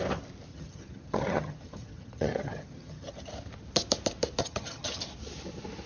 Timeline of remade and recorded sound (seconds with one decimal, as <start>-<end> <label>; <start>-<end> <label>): 0.0-0.5 recorded; 0.5-3.3 remade; 3.3-4.4 recorded; 4.4-5.0 remade; 5.0-5.9 recorded